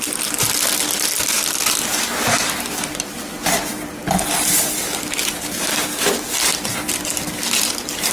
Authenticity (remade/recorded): recorded